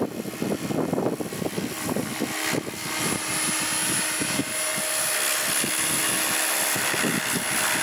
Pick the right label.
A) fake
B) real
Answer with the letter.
B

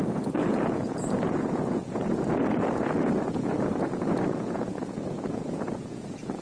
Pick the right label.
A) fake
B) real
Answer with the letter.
A